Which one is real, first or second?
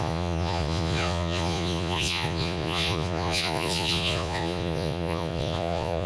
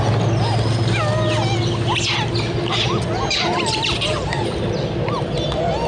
second